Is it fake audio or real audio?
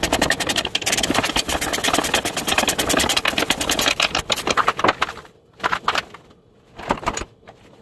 real